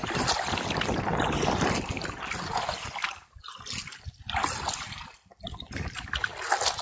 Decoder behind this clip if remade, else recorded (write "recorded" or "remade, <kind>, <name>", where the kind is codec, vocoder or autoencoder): recorded